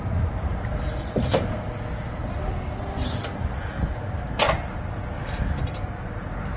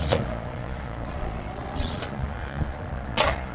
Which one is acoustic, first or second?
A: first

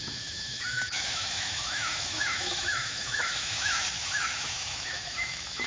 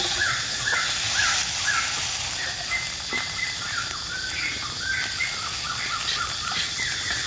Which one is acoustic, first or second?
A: second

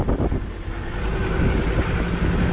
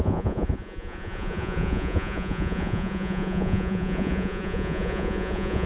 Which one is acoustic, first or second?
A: first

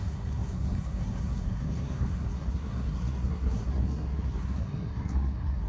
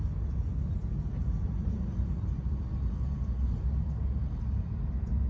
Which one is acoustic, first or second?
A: second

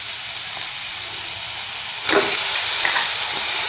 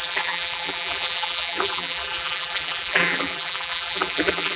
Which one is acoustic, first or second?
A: first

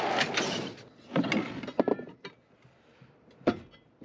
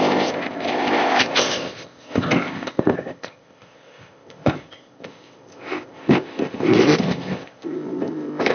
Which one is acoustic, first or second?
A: first